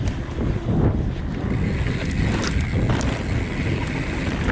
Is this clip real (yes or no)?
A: yes